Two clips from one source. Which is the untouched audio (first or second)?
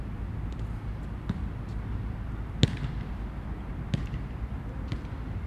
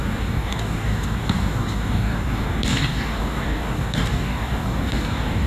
first